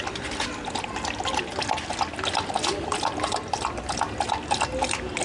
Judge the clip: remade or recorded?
recorded